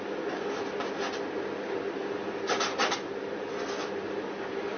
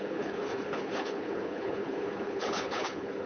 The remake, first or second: second